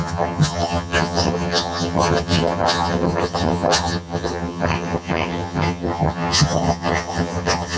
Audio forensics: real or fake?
fake